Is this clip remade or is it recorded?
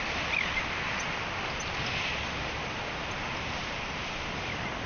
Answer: recorded